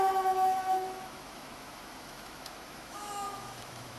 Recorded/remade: remade